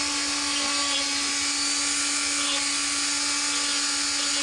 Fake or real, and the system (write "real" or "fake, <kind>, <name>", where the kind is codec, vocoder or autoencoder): real